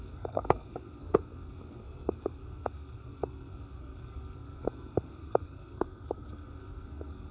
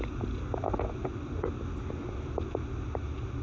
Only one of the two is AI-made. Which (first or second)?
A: first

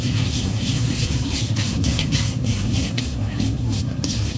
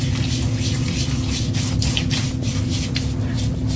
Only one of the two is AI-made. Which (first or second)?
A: first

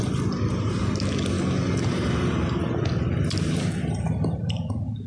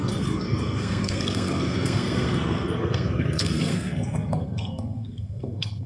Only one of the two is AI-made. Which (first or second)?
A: second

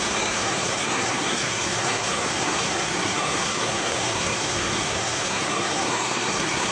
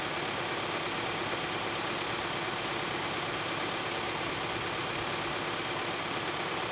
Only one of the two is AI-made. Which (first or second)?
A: first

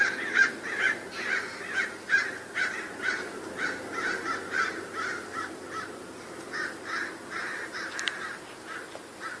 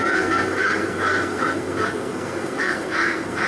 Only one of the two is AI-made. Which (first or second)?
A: second